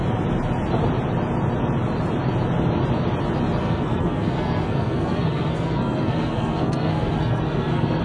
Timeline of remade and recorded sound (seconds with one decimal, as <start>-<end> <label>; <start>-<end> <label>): 0.0-3.6 recorded; 3.6-8.0 remade